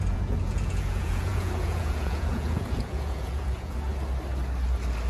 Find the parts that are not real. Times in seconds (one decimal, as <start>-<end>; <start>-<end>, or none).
0.0-3.9